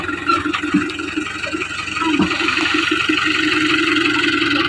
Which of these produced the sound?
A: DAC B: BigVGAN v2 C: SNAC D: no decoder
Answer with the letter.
D